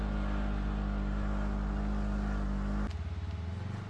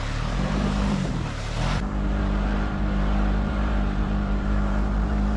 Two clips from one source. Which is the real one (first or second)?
first